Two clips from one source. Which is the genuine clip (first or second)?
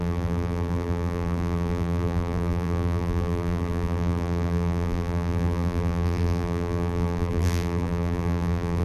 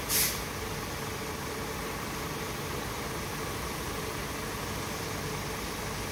second